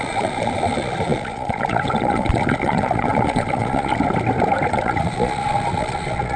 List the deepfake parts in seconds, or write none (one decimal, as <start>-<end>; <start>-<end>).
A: 0.0-3.9; 4.7-6.4